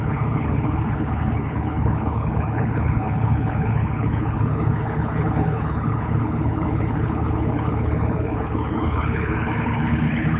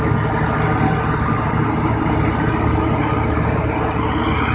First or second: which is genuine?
second